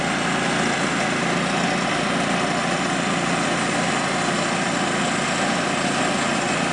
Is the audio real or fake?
real